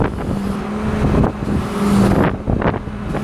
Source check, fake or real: real